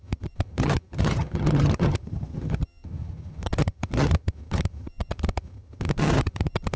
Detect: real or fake fake